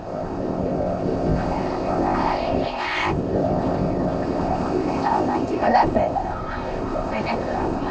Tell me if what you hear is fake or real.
fake